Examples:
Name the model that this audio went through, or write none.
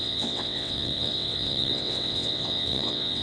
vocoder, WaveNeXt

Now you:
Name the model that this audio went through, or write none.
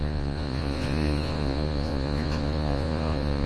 vocoder, Vocos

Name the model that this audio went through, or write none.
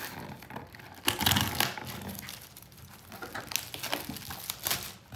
none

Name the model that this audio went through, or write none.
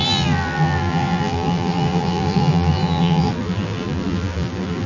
vocoder, BigVGAN v2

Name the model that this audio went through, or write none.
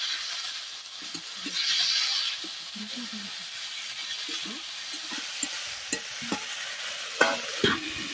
none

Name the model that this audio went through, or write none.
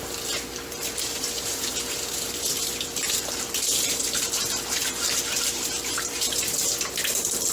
vocoder, BigVGAN v2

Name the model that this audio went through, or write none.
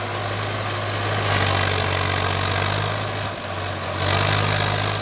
none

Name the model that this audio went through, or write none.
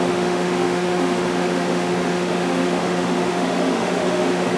autoencoder, DAC-VAE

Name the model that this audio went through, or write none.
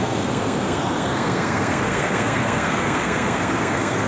codec, SNAC